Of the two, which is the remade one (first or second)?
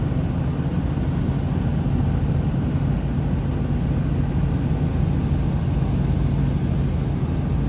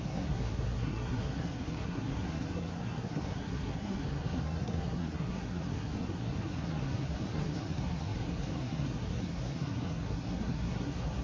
second